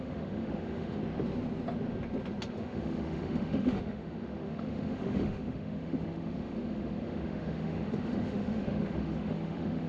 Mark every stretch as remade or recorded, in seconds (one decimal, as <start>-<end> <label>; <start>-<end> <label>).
0.0-1.0 remade; 1.0-2.5 recorded; 2.5-9.9 remade

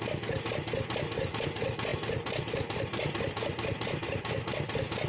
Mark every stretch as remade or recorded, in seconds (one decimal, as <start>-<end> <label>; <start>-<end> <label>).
0.0-5.1 recorded